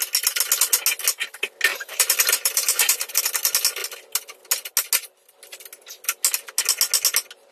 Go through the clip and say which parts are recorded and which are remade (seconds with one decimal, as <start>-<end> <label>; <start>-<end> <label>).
0.0-1.7 recorded; 1.7-3.2 remade; 3.2-7.5 recorded